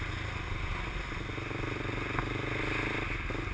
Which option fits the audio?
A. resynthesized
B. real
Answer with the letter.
B